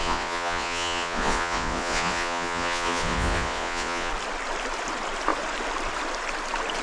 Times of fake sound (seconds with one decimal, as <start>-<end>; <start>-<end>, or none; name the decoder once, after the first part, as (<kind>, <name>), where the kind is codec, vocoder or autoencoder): 0.0-4.1 (vocoder, Vocos)